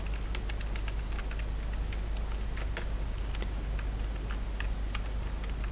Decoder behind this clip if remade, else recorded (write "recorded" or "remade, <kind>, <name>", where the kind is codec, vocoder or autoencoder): recorded